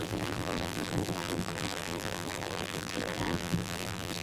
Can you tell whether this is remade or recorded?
remade